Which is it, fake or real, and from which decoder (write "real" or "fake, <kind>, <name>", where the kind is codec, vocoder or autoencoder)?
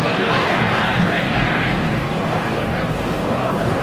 fake, codec, DAC